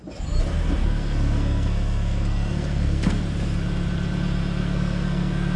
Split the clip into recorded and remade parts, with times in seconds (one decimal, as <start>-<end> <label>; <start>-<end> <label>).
0.0-0.8 recorded; 0.8-3.2 remade; 3.2-4.6 recorded; 4.6-5.6 remade